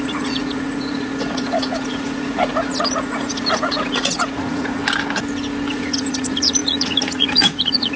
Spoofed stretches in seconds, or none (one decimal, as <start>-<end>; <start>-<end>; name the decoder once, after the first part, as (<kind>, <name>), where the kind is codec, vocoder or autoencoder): 0.0-4.8 (vocoder, Vocos); 5.7-8.0